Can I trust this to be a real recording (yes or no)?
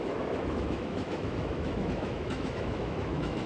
no